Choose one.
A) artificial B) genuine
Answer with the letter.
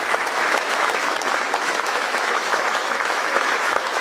A